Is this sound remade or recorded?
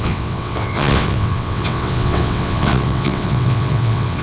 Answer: remade